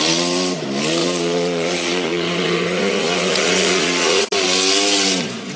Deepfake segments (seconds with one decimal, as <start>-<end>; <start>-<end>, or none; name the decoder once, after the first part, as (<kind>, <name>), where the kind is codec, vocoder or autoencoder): 1.0-4.3 (vocoder, Vocos)